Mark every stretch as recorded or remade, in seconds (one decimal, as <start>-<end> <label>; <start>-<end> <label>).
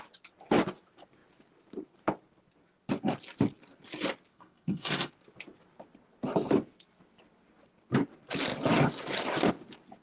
0.0-4.3 recorded; 4.3-5.1 remade; 5.1-10.0 recorded